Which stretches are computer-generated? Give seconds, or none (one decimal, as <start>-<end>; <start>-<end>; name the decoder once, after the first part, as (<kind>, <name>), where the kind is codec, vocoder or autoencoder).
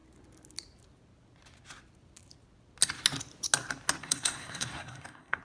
4.0-5.4 (codec, SNAC)